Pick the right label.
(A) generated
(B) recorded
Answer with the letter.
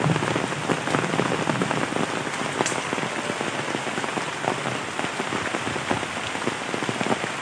B